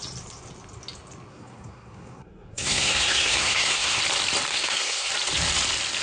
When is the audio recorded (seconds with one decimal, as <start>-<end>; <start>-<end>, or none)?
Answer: 0.0-1.3; 4.0-4.5; 5.1-6.0